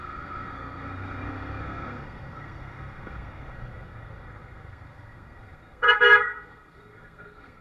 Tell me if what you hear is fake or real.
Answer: fake